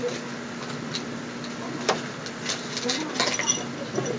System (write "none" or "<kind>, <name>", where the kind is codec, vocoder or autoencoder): none